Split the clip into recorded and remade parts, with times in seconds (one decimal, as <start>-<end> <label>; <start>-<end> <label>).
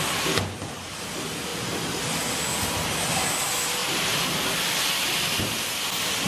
0.0-6.3 recorded